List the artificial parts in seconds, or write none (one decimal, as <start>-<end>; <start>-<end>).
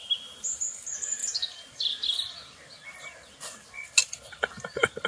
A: none